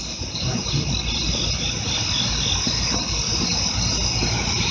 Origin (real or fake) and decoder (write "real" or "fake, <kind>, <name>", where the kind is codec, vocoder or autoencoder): real